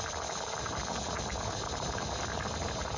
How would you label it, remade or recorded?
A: recorded